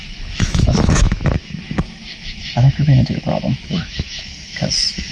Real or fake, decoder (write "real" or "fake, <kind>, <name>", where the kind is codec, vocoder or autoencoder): fake, autoencoder, DAC-VAE